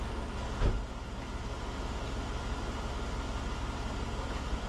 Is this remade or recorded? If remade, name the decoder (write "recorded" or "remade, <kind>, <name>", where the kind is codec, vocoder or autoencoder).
recorded